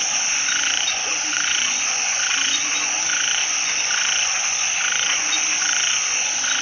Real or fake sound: fake